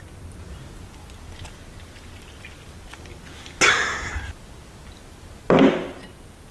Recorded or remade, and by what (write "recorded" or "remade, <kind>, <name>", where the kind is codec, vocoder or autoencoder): recorded